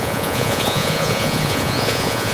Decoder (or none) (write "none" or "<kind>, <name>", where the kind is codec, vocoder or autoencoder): vocoder, Vocos